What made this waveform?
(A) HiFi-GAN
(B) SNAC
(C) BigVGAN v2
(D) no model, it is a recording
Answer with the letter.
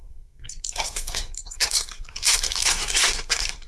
B